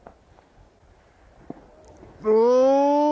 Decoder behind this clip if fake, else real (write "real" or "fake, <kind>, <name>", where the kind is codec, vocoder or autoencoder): real